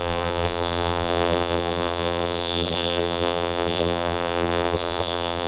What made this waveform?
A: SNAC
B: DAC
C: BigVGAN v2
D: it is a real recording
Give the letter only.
C